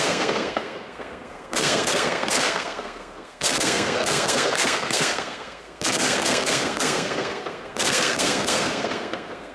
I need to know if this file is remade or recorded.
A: remade